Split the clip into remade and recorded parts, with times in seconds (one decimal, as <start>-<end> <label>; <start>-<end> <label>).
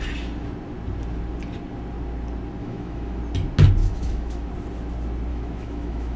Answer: 0.0-2.6 recorded; 2.6-3.2 remade; 3.2-3.8 recorded; 3.8-4.5 remade; 4.5-5.3 recorded; 5.3-6.2 remade